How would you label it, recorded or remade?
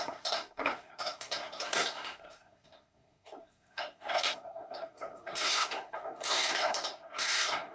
remade